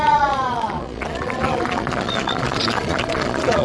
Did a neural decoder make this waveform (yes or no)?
yes